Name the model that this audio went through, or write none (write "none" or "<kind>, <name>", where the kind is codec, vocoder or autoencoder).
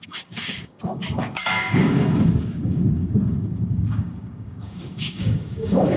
codec, DAC